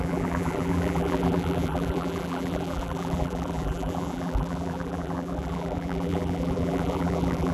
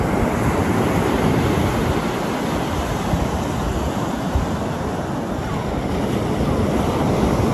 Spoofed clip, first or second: first